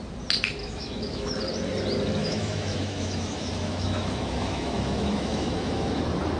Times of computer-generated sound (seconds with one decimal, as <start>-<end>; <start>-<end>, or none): 0.6-1.3; 2.2-6.0